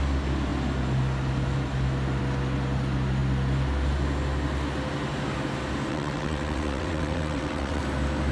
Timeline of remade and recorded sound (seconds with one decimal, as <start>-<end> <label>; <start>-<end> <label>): 0.0-5.9 recorded; 5.9-7.8 remade; 7.8-8.3 recorded